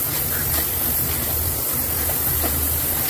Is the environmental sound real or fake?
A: real